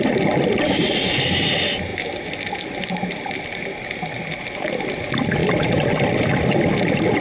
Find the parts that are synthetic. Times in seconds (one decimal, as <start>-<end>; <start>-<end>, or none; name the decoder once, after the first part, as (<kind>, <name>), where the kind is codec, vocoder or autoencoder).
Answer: none